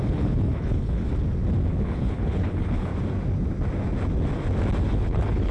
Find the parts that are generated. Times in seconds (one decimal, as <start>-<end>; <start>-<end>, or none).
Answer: 0.0-1.1; 1.7-2.9; 4.8-5.5